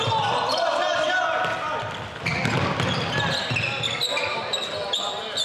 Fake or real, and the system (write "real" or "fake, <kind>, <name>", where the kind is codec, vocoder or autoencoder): real